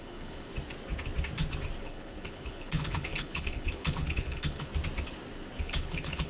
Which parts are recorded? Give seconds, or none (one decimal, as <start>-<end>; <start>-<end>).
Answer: 0.5-1.8; 4.7-5.6